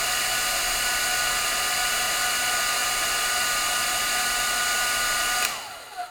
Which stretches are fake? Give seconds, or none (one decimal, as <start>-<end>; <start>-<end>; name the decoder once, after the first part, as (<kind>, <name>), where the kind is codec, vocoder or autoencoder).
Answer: none